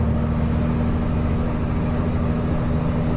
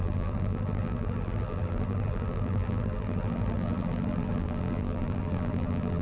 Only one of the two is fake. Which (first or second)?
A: second